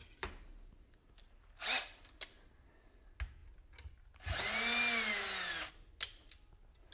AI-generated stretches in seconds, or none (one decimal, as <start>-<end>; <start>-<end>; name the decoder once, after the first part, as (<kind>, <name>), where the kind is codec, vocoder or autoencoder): none

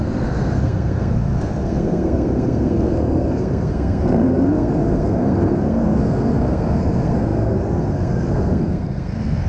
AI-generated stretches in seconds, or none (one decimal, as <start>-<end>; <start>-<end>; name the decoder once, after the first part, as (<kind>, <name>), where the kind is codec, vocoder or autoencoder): 0.0-9.5 (codec, SNAC)

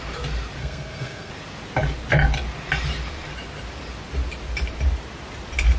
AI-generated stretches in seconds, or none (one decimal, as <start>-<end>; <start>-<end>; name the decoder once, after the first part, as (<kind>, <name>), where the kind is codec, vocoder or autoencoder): 0.6-1.3 (codec, SNAC)

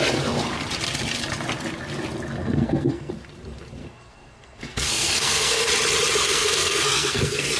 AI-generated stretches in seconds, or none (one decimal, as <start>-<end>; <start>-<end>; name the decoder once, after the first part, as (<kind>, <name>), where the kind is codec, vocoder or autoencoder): 2.4-3.1 (codec, SNAC); 3.8-5.7; 6.2-7.6

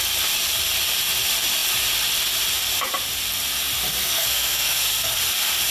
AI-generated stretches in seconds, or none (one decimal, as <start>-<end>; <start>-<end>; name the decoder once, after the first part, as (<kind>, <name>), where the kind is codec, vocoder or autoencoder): 4.0-5.1 (codec, SNAC)

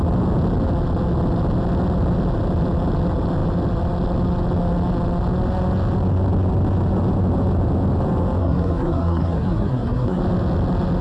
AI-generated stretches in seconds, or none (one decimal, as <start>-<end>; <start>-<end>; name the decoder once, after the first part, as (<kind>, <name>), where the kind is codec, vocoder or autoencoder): 8.4-10.2 (codec, SNAC)

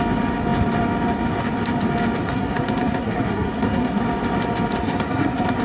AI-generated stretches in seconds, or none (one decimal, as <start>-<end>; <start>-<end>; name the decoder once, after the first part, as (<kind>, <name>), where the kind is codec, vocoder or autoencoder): 2.2-4.0 (codec, SNAC); 4.8-5.6

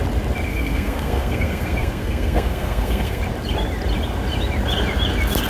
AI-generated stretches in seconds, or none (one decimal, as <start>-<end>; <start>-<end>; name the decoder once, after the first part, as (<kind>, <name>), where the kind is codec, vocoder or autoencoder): 0.5-3.2 (codec, SNAC)